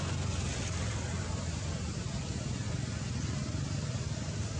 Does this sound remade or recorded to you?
recorded